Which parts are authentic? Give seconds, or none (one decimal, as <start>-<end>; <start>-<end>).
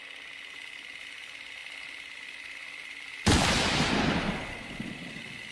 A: 0.0-5.5